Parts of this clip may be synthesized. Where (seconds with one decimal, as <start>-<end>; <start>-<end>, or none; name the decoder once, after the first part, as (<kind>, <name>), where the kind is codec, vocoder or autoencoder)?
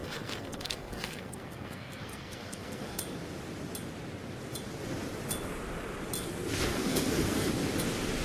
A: 0.0-3.0 (codec, SNAC); 6.7-7.5